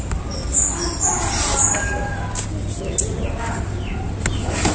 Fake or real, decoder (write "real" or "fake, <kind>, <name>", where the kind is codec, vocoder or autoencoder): real